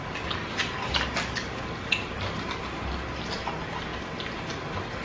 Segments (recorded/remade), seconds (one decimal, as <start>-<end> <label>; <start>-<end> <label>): 0.0-0.4 recorded; 0.4-3.4 remade; 3.4-3.9 recorded; 3.9-4.6 remade; 4.6-5.0 recorded